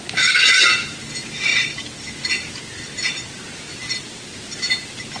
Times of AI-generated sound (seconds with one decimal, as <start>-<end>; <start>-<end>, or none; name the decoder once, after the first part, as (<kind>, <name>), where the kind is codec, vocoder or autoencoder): none